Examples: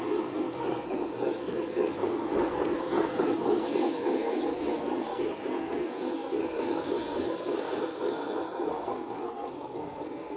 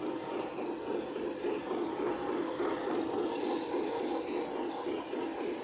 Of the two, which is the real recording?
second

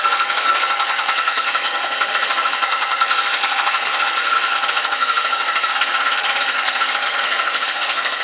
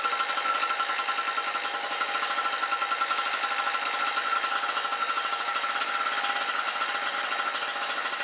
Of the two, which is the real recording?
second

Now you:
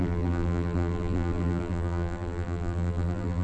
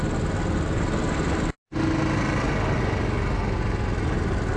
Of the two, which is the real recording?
second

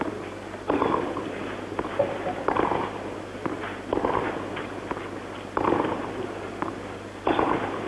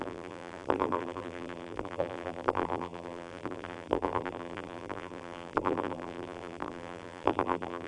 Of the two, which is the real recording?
first